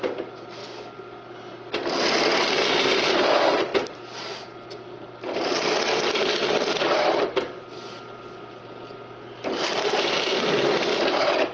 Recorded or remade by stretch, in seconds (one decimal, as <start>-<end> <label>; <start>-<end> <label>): 0.0-11.5 recorded